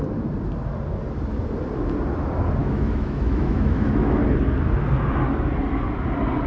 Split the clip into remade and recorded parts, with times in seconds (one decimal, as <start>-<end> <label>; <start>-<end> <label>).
0.0-2.6 recorded; 2.6-4.2 remade; 4.2-6.5 recorded